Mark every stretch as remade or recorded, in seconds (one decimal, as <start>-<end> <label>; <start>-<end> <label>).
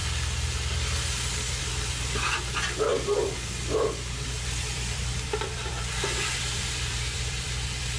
0.0-1.6 recorded; 1.6-8.0 remade